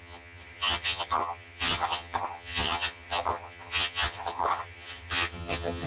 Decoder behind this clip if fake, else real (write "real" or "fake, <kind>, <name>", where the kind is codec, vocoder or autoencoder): fake, vocoder, HiFi-GAN